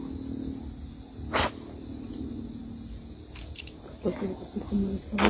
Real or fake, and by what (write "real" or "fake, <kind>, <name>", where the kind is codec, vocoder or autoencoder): real